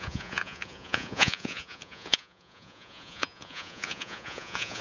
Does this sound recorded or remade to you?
remade